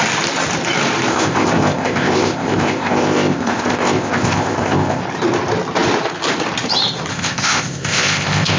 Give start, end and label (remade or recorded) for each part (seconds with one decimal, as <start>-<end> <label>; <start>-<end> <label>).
0.0-1.1 recorded; 1.1-5.0 remade; 5.0-7.1 recorded; 7.1-8.6 remade

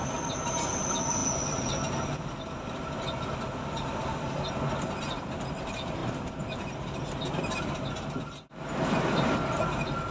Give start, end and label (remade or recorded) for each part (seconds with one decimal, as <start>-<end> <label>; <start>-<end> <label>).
0.0-10.1 recorded

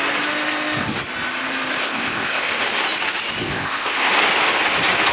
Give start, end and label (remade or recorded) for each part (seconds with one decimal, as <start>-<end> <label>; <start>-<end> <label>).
0.0-1.8 recorded; 1.8-2.5 remade; 2.5-3.4 recorded; 3.4-4.1 remade; 4.1-5.1 recorded